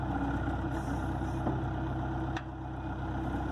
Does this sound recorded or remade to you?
recorded